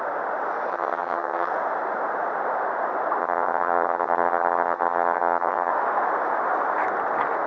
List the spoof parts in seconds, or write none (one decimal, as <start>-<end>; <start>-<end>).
0.7-1.5; 3.2-5.7